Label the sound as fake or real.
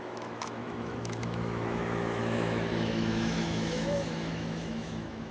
fake